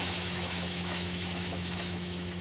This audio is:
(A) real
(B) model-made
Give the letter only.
B